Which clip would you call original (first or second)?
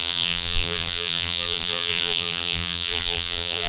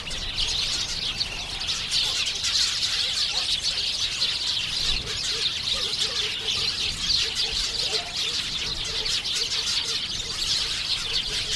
second